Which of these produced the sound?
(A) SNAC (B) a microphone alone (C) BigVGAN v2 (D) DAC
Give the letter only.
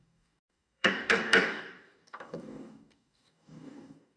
D